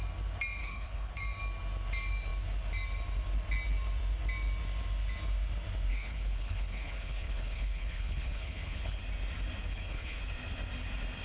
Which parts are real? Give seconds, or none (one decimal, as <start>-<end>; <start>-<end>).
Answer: 0.0-0.6; 1.1-5.9; 9.0-9.7; 10.2-11.2